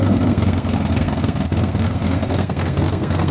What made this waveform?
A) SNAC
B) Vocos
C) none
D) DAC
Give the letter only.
A